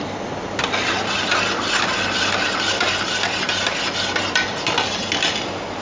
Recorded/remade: recorded